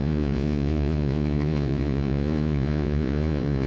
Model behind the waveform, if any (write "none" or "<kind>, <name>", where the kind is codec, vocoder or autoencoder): vocoder, Vocos